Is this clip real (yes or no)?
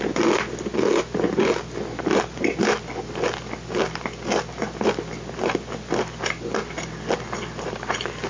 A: yes